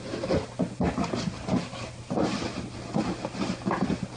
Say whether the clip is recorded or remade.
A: recorded